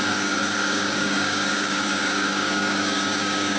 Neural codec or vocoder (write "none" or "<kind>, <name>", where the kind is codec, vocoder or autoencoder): codec, DAC